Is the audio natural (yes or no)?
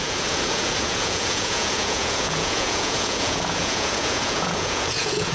no